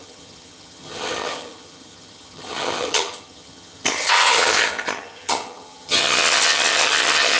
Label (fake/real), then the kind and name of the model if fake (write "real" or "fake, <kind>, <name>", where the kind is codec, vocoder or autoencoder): fake, vocoder, HiFi-GAN